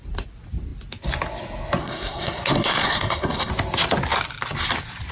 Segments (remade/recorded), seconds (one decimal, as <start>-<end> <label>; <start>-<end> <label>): 0.0-1.8 recorded; 1.8-3.5 remade; 3.5-5.1 recorded